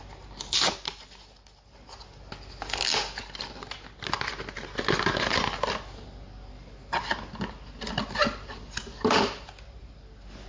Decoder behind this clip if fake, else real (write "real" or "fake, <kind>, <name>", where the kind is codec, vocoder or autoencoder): real